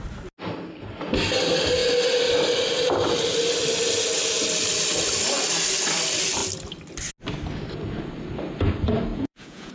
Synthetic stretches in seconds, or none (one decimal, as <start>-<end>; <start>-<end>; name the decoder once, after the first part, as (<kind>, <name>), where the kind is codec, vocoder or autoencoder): 9.1-9.7 (vocoder, Vocos)

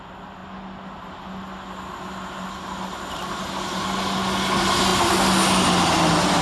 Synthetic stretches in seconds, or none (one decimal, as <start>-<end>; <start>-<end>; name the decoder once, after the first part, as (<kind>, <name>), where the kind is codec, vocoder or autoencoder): none

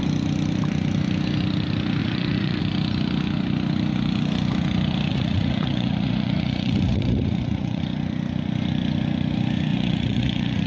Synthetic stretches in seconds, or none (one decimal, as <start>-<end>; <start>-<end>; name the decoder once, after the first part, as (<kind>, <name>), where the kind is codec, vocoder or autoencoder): 2.0-2.6 (vocoder, Vocos); 5.1-7.8; 9.7-10.7

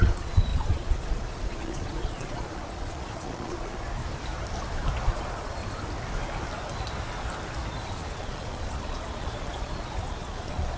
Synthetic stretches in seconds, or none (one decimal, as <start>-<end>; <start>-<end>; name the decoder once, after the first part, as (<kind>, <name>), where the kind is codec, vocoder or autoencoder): 0.0-4.0 (vocoder, Vocos); 5.1-5.6; 7.9-10.8

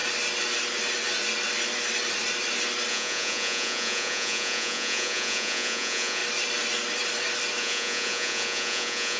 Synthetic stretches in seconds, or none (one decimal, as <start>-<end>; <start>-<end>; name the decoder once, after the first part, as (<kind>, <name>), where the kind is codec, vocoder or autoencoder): 2.9-6.2 (vocoder, Vocos); 7.6-9.2

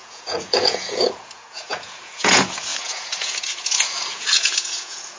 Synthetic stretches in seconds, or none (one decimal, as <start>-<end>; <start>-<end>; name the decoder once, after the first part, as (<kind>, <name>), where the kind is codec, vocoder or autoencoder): 0.0-5.2 (vocoder, Vocos)

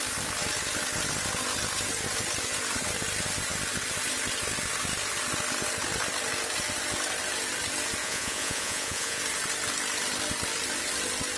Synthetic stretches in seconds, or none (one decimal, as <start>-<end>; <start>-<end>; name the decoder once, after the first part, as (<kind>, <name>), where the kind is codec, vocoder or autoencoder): 8.0-9.2 (vocoder, Vocos)

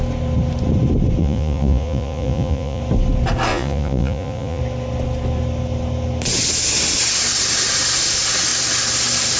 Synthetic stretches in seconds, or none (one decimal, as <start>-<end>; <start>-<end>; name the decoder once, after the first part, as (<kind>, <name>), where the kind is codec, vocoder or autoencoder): 1.2-2.8 (vocoder, Vocos); 3.5-4.6